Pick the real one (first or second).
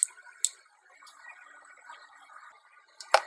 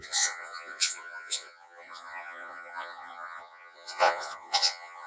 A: first